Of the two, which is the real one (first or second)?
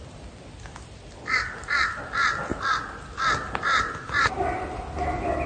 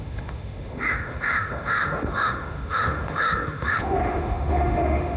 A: first